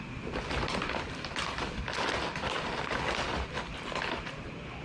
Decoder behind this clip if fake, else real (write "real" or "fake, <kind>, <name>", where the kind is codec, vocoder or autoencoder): real